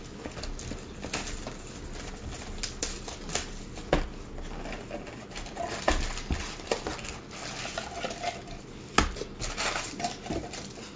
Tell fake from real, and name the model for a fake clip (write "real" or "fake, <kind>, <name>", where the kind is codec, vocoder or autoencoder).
real